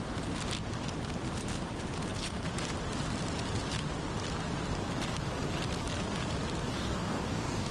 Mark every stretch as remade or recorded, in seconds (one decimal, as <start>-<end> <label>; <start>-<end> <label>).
0.0-6.7 recorded; 6.7-7.7 remade